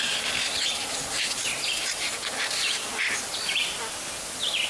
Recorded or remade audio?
recorded